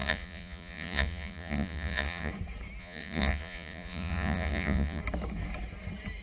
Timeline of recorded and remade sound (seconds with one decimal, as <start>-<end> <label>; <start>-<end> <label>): 0.0-2.3 remade; 2.3-2.8 recorded; 2.8-5.0 remade; 5.0-6.2 recorded